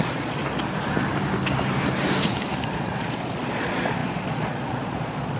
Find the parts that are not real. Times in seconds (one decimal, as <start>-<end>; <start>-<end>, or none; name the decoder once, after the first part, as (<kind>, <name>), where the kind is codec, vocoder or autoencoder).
0.0-0.4 (vocoder, Vocos); 2.7-5.4